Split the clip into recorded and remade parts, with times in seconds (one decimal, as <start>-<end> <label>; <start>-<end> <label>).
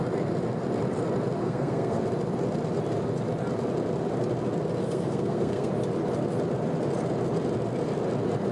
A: 0.0-1.4 recorded; 1.4-2.0 remade; 2.0-4.8 recorded; 4.8-5.7 remade; 5.7-8.5 recorded